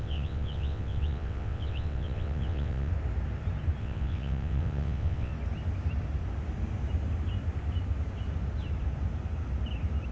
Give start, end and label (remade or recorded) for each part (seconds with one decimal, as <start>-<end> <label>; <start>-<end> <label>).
0.0-2.9 remade; 2.9-3.8 recorded; 3.8-5.3 remade; 5.3-10.1 recorded